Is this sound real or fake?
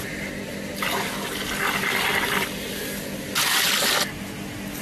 real